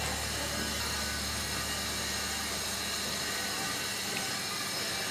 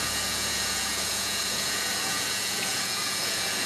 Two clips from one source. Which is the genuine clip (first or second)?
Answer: first